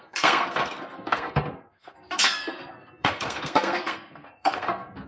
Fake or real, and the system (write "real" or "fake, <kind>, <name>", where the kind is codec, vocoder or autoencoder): fake, codec, SNAC